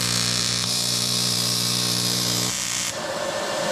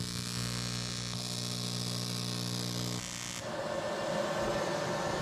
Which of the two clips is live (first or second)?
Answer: second